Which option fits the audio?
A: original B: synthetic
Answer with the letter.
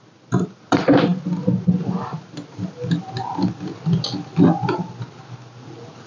A